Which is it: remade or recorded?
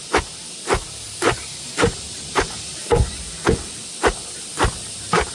recorded